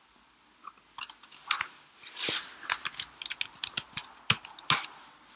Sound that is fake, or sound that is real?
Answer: real